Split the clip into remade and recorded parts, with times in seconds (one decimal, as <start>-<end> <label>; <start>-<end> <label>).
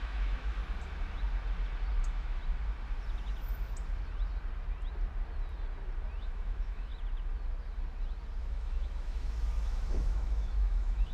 0.0-0.6 remade; 0.6-2.0 recorded; 2.0-2.4 remade; 2.4-6.2 recorded; 6.2-6.9 remade; 6.9-8.4 recorded; 8.4-11.1 remade